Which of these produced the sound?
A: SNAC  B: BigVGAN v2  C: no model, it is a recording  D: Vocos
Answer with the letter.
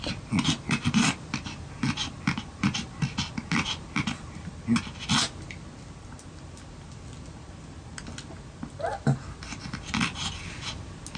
C